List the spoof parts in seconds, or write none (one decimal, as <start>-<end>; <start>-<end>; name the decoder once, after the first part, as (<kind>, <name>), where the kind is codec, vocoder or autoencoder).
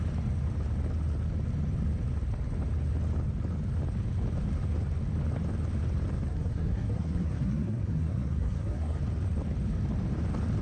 6.3-9.0 (codec, SNAC)